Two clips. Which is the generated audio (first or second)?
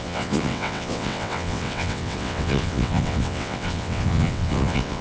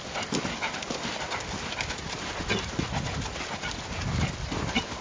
first